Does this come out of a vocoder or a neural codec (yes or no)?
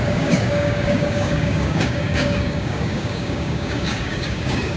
yes